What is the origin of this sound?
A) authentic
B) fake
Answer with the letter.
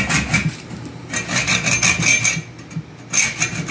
A